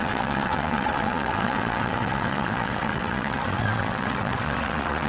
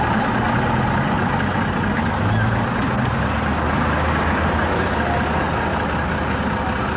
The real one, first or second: second